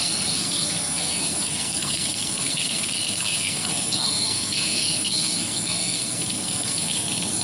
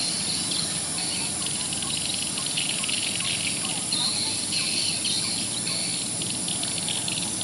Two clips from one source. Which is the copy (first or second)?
first